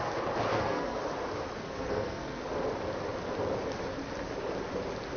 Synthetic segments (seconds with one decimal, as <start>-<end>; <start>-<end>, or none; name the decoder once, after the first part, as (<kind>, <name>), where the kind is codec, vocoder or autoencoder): 0.5-1.0 (codec, SNAC); 1.6-2.4